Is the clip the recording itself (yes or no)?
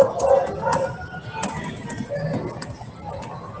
yes